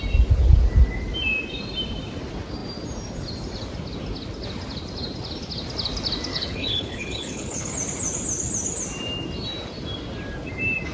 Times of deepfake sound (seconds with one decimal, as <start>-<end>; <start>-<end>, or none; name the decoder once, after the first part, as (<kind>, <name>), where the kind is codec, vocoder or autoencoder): 6.3-7.7 (codec, HILCodec)